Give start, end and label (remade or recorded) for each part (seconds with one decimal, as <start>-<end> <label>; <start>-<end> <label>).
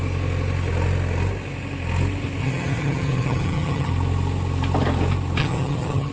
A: 0.0-2.4 recorded; 2.4-3.9 remade; 3.9-5.4 recorded; 5.4-6.1 remade